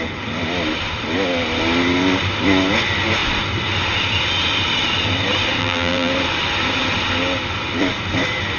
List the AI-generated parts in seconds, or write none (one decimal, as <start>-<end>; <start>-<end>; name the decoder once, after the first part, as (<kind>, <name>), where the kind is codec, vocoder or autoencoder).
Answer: 5.6-6.1 (vocoder, BigVGAN v2)